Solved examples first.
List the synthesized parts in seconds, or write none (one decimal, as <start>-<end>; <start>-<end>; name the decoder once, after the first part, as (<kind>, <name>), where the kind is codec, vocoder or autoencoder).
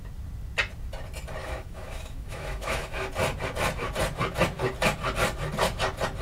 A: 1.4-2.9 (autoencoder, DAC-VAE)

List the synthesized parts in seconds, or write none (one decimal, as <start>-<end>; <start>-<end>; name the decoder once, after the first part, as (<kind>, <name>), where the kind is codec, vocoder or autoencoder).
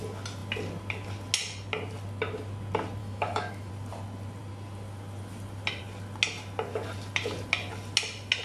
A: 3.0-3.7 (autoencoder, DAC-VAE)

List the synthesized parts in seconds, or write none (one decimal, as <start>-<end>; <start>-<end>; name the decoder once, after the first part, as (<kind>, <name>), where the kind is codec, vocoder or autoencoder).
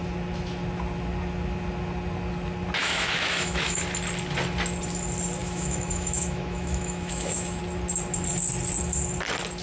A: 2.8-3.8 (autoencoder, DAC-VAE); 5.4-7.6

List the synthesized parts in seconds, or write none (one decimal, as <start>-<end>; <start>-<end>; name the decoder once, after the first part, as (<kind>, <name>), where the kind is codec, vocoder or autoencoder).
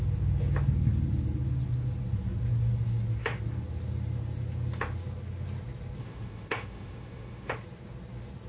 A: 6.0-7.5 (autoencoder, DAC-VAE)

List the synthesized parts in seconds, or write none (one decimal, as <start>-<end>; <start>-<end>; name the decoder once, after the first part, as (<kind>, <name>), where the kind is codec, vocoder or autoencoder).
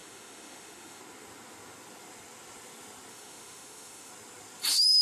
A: 0.0-1.0 (autoencoder, DAC-VAE); 3.1-4.1